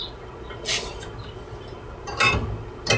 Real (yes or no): yes